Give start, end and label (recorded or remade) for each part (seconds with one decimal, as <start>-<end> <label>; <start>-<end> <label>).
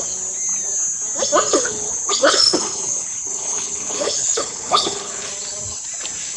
0.0-1.5 recorded; 1.5-5.3 remade; 5.3-6.4 recorded